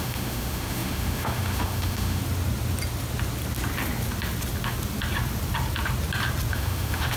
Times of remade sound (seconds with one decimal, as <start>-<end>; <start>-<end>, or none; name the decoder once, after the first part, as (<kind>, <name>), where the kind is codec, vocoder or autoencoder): 0.0-2.2 (autoencoder, DAC-VAE); 6.5-7.2